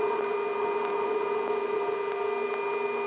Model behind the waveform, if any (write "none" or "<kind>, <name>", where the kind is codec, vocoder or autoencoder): none